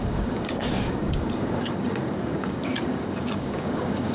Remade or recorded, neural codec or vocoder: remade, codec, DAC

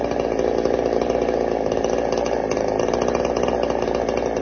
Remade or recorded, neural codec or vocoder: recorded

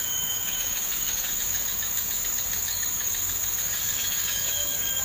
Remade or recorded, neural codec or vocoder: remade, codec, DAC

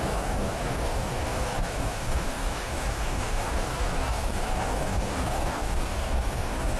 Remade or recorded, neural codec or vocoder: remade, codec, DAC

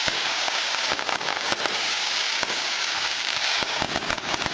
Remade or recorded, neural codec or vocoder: remade, codec, DAC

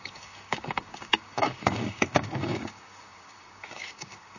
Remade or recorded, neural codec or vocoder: remade, codec, DAC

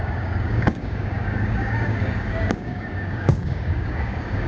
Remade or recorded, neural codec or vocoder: remade, codec, DAC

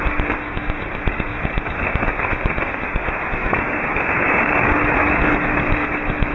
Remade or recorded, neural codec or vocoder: remade, codec, DAC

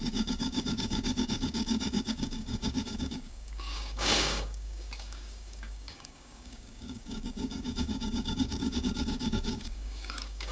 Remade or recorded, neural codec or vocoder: remade, codec, DAC